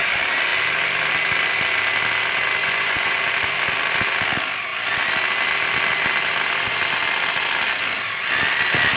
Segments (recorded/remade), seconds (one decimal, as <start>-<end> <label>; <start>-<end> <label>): 0.0-2.6 recorded; 2.6-3.2 remade; 3.2-9.0 recorded